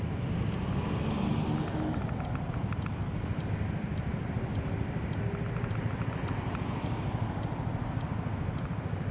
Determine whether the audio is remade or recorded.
recorded